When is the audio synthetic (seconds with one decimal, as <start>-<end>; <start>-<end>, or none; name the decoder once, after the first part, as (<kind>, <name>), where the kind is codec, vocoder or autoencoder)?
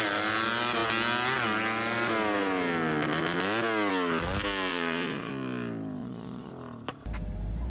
4.7-5.3 (vocoder, Vocos); 6.0-6.5